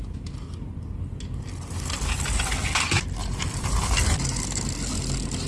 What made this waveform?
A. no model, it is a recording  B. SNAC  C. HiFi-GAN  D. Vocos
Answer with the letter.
A